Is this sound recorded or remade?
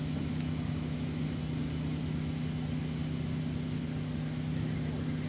recorded